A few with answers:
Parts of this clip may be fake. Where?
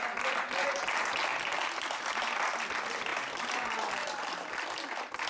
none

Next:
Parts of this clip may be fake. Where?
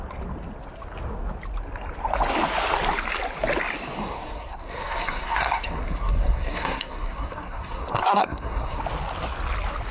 4.0-8.8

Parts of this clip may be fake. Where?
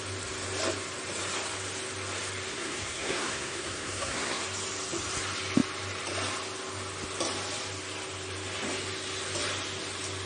2.5-4.4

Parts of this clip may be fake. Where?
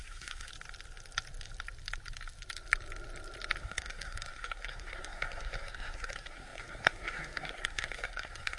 0.0-0.5; 3.6-8.6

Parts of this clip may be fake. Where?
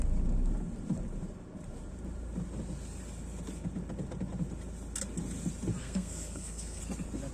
5.8-6.8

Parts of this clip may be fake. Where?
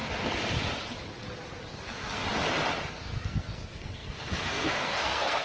1.7-2.2; 2.9-5.4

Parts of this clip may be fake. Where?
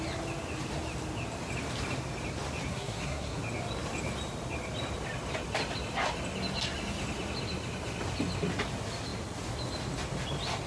2.7-3.4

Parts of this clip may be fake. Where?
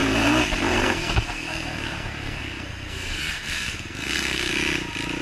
0.0-4.5